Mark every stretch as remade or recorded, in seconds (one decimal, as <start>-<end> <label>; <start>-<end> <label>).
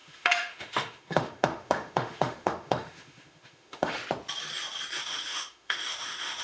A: 0.0-4.0 remade; 4.0-5.0 recorded; 5.0-6.4 remade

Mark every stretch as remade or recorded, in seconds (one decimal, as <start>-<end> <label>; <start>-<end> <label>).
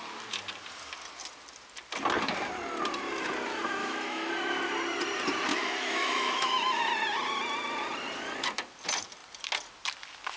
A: 0.0-3.8 recorded; 3.8-4.3 remade; 4.3-5.5 recorded; 5.5-6.8 remade; 6.8-10.4 recorded